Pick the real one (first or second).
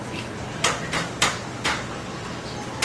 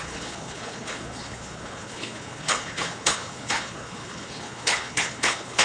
first